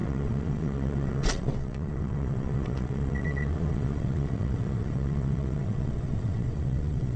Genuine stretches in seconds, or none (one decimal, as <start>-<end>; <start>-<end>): none